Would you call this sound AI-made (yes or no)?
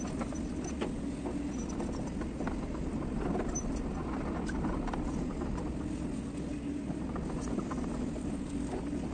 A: no